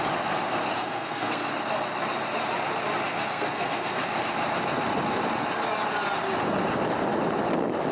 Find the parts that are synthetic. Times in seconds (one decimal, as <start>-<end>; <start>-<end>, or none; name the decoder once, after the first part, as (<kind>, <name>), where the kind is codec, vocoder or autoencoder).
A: 0.7-1.5 (codec, SNAC); 3.1-4.0